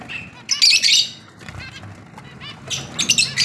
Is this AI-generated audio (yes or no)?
no